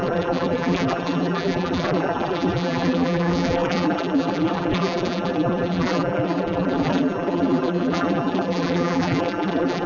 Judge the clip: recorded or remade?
remade